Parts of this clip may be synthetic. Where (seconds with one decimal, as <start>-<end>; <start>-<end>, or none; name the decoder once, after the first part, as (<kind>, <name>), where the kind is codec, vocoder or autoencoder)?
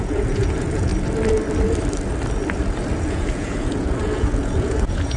0.0-0.9 (vocoder, Vocos); 3.0-5.2